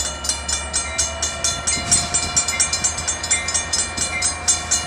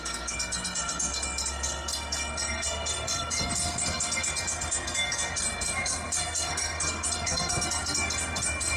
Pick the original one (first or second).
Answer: first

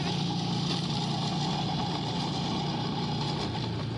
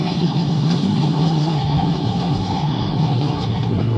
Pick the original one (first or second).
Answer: first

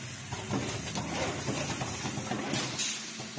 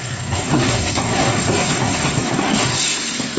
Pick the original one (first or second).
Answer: first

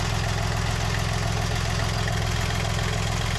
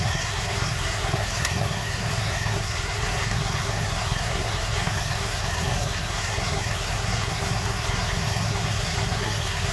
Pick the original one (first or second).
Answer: first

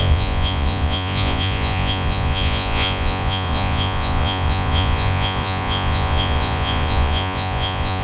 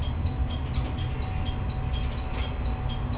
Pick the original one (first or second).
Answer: second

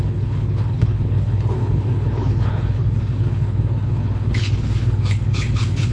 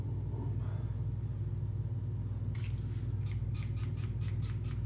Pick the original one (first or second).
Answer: second